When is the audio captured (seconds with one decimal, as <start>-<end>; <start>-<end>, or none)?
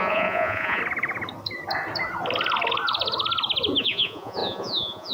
0.8-3.8